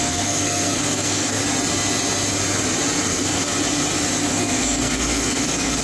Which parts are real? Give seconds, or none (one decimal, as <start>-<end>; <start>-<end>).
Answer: 1.4-3.1; 3.5-4.3